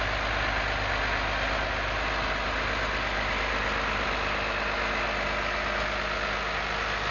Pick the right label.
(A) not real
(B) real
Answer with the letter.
B